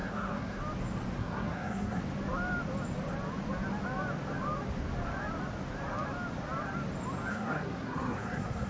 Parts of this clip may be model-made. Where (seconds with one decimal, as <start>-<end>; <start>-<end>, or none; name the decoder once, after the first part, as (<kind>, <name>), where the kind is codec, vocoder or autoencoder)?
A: 0.0-0.6 (codec, SNAC); 1.2-2.0; 7.3-8.7